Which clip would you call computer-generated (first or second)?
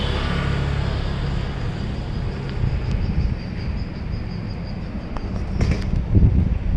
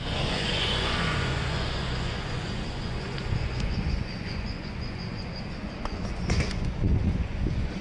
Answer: second